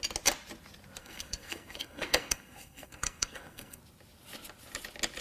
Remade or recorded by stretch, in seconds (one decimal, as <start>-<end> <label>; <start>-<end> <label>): 0.0-1.0 recorded; 1.0-3.8 remade; 3.8-5.2 recorded